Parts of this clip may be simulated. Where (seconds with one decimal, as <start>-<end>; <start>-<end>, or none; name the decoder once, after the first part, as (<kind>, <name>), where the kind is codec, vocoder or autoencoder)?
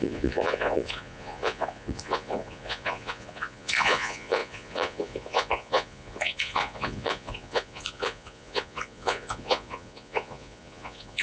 0.0-11.2 (vocoder, Vocos)